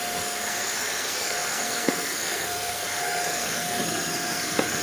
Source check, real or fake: fake